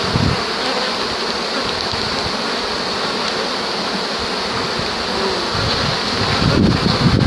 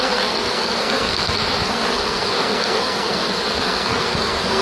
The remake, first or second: second